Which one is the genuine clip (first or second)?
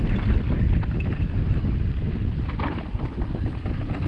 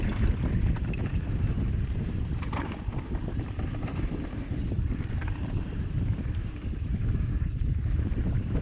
first